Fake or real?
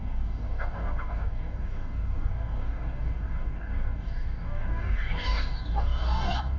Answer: fake